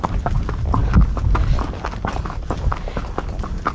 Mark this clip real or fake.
real